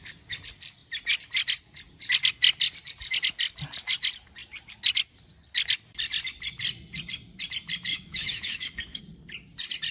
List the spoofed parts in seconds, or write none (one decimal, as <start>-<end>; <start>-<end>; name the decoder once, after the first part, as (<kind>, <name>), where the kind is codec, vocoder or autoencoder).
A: 7.9-9.0 (autoencoder, DAC-VAE)